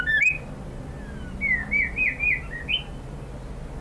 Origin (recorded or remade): recorded